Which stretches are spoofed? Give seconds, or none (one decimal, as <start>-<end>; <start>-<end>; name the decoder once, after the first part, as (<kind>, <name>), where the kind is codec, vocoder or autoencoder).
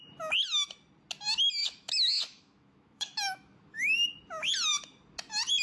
1.6-4.1 (autoencoder, DAC-VAE)